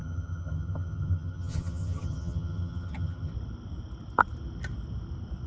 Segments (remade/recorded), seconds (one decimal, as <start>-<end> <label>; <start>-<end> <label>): 0.0-3.3 remade; 3.3-5.5 recorded